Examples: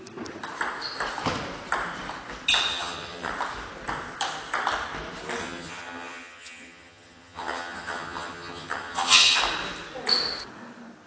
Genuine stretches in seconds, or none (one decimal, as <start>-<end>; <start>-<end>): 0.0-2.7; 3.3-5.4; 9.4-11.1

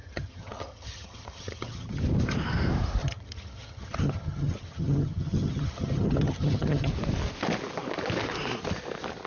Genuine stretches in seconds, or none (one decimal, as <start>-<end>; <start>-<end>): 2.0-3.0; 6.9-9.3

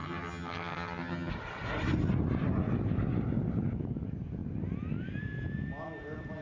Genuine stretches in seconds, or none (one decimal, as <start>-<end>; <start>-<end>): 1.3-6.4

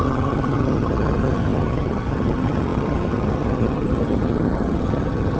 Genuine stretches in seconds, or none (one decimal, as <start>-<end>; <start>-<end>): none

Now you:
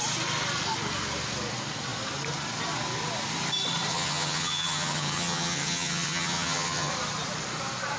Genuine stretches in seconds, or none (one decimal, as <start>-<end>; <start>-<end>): 0.0-3.9; 6.9-8.0

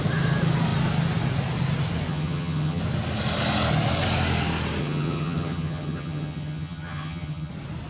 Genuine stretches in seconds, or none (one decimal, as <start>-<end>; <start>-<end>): 0.0-2.1; 2.8-4.8; 7.5-7.9